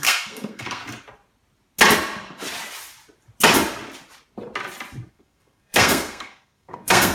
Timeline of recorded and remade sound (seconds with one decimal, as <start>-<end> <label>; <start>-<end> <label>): 0.0-0.8 remade; 0.8-5.1 recorded; 5.1-7.1 remade

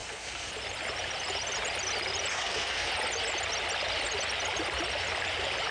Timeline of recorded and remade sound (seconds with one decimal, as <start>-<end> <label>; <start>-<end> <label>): 0.0-0.5 remade; 0.5-2.3 recorded; 2.3-2.9 remade; 2.9-5.7 recorded

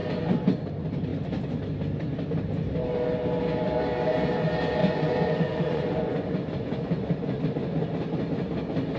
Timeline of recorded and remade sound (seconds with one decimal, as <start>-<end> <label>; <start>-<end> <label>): 0.0-4.8 recorded; 4.8-7.4 remade; 7.4-9.0 recorded

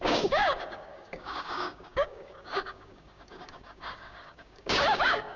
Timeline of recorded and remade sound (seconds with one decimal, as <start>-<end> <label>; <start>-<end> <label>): 0.0-5.4 remade

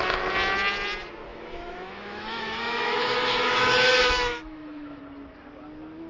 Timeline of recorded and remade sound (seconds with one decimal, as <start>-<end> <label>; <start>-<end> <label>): 0.0-1.3 recorded; 1.3-5.0 remade; 5.0-6.1 recorded